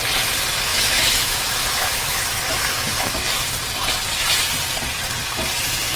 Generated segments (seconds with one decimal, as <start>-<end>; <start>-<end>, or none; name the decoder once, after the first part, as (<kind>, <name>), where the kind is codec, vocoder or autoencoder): 0.7-3.3 (autoencoder, DAC-VAE)